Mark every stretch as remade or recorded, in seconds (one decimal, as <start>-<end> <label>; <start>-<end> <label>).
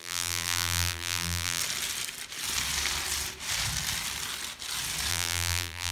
0.0-1.6 remade; 1.6-5.1 recorded; 5.1-5.9 remade